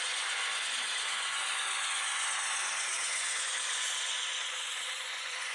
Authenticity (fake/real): fake